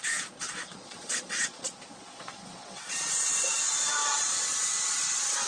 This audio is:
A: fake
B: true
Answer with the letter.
A